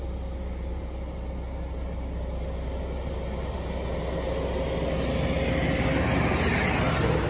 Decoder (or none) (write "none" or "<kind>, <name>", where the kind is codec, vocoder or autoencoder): none